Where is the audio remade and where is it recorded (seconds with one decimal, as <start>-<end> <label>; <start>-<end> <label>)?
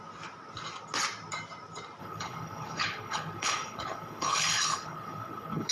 0.0-2.0 recorded; 2.0-5.7 remade